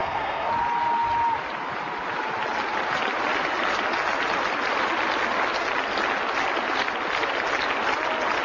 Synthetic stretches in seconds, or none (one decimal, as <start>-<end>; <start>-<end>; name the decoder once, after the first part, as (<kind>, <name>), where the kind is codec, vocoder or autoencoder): 0.0-0.5 (codec, SNAC)